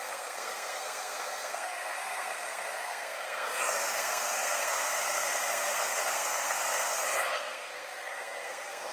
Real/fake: fake